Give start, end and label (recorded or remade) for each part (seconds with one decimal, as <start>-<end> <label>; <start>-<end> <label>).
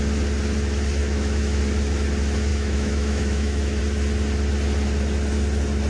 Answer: 0.0-1.0 recorded; 1.0-1.6 remade; 1.6-2.5 recorded; 2.5-3.8 remade; 3.8-5.9 recorded